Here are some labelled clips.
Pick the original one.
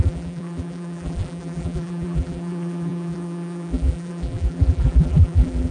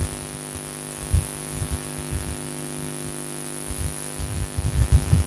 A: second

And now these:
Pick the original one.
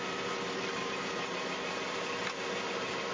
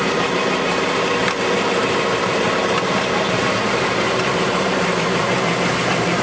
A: first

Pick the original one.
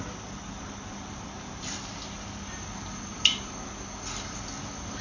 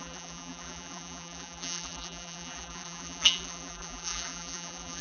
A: first